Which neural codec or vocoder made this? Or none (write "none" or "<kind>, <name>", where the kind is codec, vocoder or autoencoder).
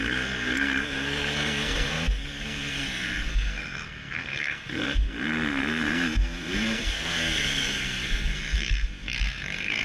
codec, SNAC